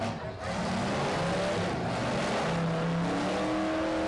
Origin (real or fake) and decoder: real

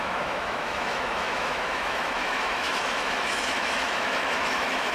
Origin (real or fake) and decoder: fake, autoencoder, DAC-VAE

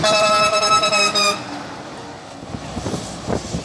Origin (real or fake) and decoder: real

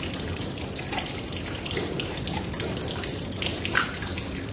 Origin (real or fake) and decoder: real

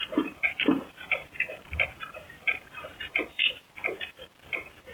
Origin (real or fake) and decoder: fake, vocoder, BigVGAN v2